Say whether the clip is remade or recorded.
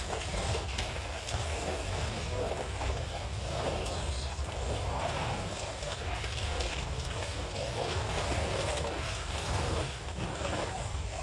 remade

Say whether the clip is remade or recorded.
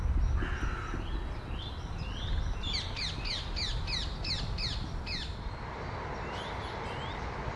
recorded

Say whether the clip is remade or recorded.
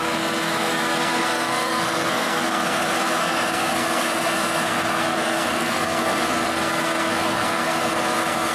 remade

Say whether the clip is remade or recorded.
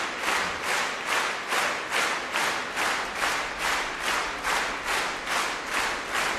recorded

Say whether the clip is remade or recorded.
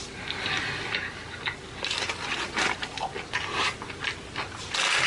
recorded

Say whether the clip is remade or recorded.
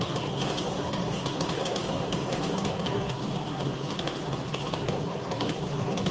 remade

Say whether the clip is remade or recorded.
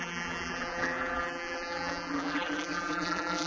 remade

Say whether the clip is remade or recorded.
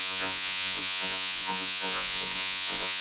remade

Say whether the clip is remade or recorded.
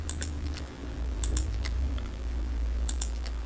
remade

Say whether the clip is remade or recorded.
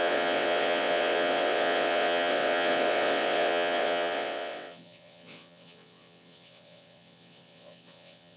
remade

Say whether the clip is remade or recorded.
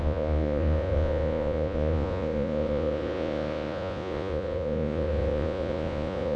remade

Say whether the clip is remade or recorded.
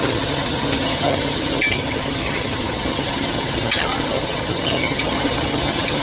remade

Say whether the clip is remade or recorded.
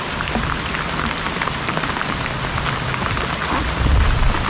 remade